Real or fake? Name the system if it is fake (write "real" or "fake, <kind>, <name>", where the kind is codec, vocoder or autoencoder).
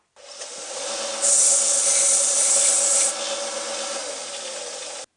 real